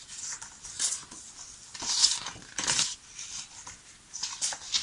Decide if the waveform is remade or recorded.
recorded